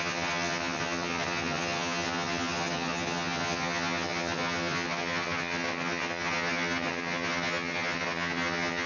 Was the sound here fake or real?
fake